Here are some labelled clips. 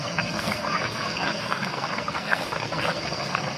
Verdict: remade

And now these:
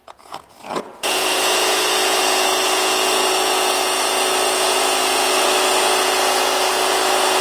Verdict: remade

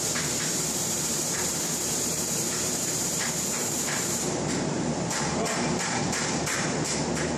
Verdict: remade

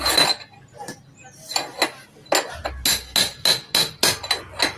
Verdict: recorded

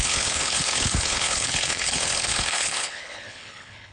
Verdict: remade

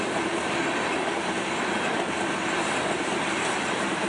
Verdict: recorded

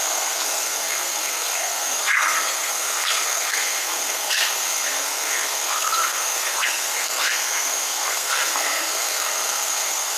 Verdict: remade